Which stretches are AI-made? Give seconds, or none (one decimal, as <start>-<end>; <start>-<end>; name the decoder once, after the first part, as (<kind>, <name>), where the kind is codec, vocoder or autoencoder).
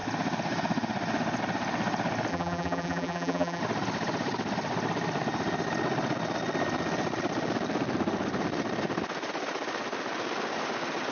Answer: 2.3-3.6 (vocoder, BigVGAN v2)